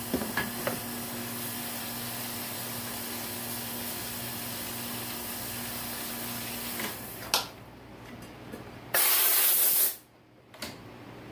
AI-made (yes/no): no